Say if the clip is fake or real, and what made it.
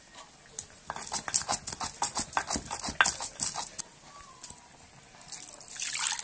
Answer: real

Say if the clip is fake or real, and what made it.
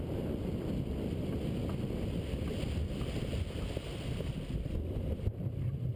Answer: real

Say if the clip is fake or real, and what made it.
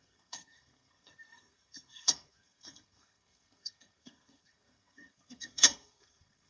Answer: fake, codec, SNAC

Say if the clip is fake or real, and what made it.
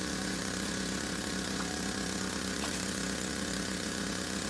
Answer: fake, vocoder, Vocos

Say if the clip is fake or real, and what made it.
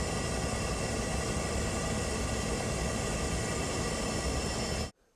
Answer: real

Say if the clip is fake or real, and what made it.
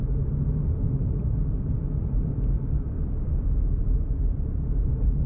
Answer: fake, vocoder, BigVGAN v2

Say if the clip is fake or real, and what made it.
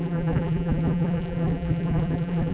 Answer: fake, vocoder, BigVGAN v2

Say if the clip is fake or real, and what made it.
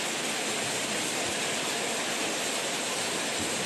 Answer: real